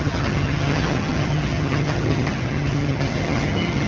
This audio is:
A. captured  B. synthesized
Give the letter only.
B